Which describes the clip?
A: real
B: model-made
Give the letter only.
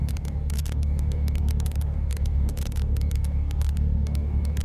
B